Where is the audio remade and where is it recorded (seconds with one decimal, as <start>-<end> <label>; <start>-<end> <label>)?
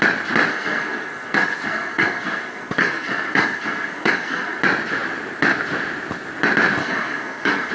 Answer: 0.0-0.5 recorded; 0.5-4.6 remade; 4.6-6.8 recorded; 6.8-7.7 remade